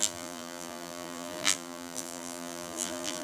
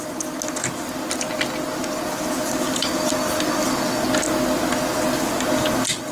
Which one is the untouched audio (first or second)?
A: second